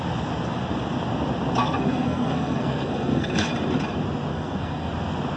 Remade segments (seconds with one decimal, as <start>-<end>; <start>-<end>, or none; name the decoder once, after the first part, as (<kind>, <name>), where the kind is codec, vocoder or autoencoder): 1.6-3.5 (codec, SNAC); 4.3-4.9